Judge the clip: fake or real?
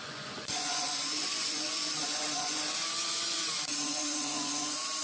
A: fake